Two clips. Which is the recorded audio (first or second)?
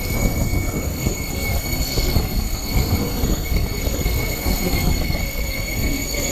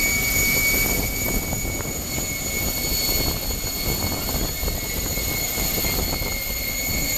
second